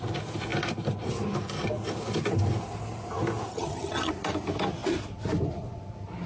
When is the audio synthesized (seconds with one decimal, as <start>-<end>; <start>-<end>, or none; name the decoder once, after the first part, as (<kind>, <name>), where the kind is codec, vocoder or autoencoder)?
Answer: 3.5-4.1 (vocoder, HiFi-GAN)